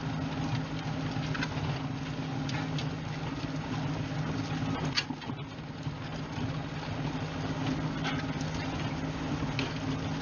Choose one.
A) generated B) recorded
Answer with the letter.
B